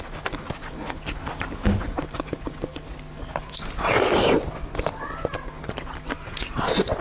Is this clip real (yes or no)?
yes